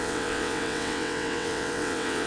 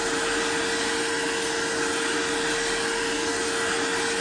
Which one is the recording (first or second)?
second